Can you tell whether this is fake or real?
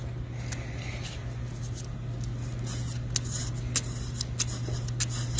real